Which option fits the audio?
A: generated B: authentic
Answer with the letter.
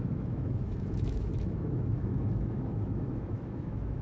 A